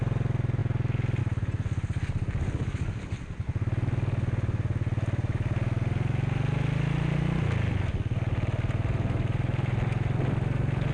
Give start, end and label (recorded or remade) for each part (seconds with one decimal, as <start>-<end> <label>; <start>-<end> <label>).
0.0-10.9 recorded